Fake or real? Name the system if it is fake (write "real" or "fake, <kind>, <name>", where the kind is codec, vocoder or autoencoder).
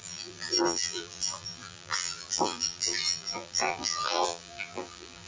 fake, vocoder, BigVGAN v2